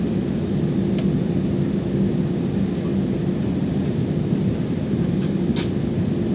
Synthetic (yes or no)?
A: no